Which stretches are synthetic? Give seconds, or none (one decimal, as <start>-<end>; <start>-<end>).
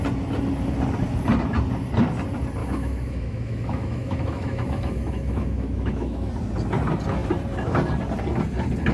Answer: 2.6-6.3